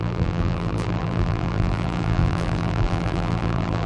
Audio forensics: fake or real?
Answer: fake